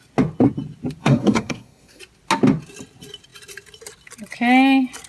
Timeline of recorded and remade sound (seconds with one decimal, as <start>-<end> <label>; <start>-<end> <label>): 0.0-1.0 recorded; 1.0-2.0 remade; 2.0-5.1 recorded